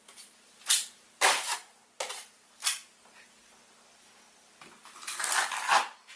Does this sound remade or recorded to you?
recorded